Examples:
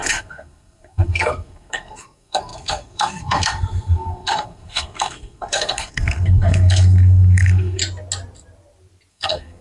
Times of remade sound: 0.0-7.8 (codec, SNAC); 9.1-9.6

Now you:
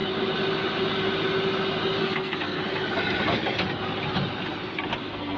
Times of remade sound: 2.0-2.6 (codec, SNAC); 5.0-5.4

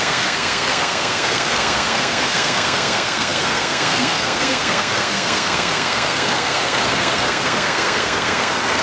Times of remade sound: 0.0-8.8 (codec, SNAC)

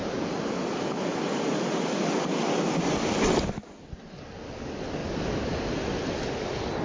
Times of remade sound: none

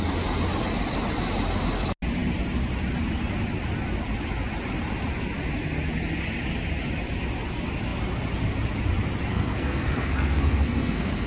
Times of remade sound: 9.3-11.3 (codec, SNAC)

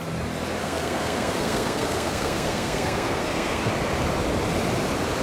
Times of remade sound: 0.6-3.7 (codec, SNAC)

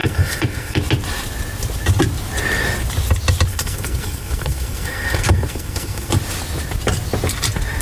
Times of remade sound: 0.0-0.8 (codec, SNAC); 3.5-6.1

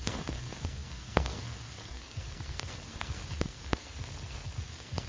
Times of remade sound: 0.0-5.1 (codec, SNAC)